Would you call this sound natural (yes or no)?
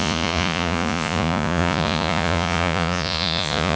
no